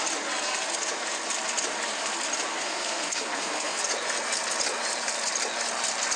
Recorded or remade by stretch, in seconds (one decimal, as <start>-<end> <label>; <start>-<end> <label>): 0.0-2.5 recorded; 2.5-3.8 remade; 3.8-6.2 recorded